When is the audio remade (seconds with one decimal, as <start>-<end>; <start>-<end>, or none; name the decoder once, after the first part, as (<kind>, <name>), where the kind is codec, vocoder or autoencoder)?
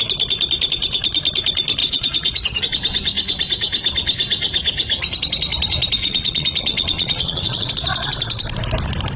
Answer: 1.8-2.6 (vocoder, Vocos); 6.0-7.7